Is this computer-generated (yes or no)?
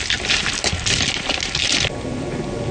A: no